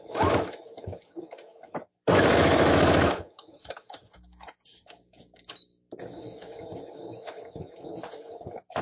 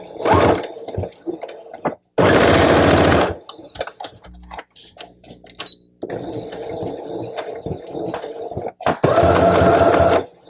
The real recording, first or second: second